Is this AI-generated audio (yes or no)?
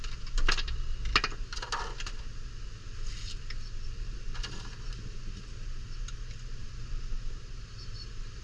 no